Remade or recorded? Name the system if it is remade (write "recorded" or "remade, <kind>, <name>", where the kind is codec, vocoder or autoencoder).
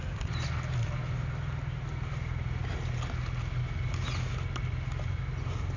recorded